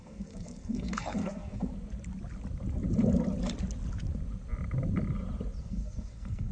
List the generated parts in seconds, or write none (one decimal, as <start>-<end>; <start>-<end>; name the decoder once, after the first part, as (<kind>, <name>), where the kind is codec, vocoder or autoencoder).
0.0-1.7 (codec, SNAC); 5.6-6.5